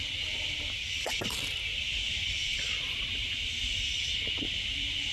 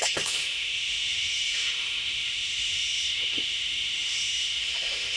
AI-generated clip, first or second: second